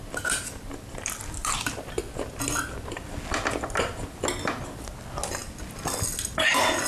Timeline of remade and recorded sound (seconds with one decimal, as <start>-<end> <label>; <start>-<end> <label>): 0.0-1.4 recorded; 1.4-2.0 remade; 2.0-6.9 recorded